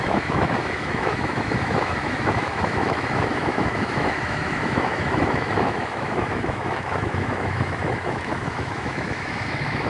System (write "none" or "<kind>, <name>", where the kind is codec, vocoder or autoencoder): autoencoder, DAC-VAE